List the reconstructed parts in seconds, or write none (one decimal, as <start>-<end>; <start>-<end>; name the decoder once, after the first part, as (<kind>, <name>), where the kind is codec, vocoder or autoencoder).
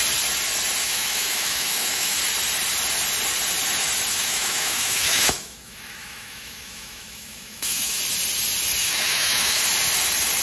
0.8-2.2 (autoencoder, DAC-VAE); 4.1-8.0; 8.8-9.6